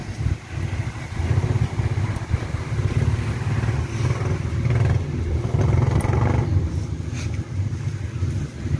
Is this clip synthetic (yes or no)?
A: no